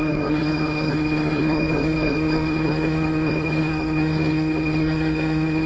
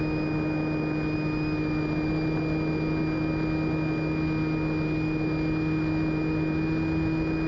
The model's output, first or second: first